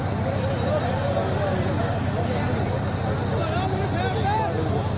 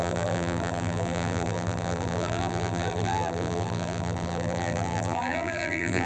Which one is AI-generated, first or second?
second